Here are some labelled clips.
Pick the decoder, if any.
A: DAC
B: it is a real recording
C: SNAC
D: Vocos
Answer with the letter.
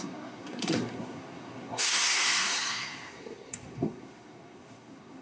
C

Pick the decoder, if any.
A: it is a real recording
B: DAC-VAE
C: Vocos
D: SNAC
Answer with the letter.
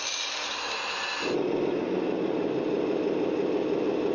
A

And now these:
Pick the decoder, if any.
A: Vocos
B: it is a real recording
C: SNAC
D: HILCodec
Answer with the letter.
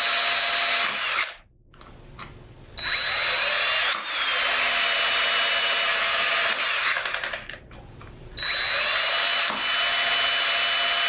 B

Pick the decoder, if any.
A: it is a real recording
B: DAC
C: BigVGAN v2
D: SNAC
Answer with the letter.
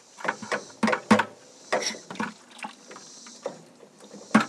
A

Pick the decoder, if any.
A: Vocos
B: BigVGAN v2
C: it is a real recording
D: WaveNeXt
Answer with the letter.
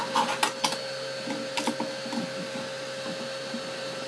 C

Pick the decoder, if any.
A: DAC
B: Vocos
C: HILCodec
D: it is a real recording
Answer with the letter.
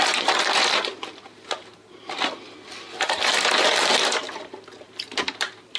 D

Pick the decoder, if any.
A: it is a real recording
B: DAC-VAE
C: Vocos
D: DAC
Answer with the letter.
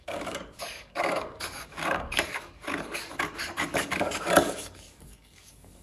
D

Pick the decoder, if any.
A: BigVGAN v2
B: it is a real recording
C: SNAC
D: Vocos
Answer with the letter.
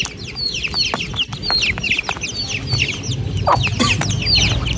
B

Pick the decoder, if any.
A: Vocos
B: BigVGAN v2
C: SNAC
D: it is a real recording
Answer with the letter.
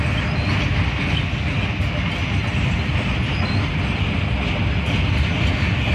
D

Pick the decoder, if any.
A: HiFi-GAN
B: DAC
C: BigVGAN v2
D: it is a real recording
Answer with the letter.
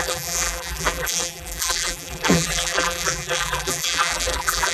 C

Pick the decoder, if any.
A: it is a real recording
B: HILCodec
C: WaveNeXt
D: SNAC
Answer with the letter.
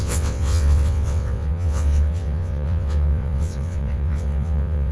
C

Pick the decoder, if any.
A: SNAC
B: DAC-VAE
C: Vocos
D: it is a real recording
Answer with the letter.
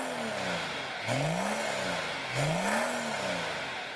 D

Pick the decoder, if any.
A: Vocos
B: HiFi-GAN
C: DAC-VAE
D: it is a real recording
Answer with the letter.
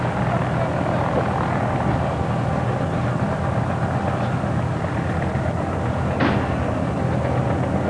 D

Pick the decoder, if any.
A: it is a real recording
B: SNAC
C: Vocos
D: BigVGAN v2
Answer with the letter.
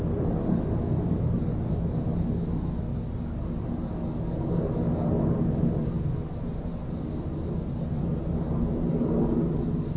A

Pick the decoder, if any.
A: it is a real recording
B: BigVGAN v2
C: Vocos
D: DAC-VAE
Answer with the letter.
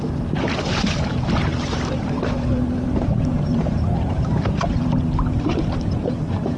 B